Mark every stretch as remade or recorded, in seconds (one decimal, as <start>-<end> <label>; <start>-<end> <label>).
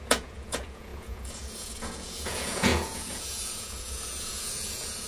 0.0-5.1 remade